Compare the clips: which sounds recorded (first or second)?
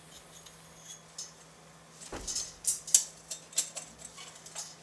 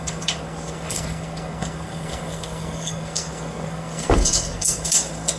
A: first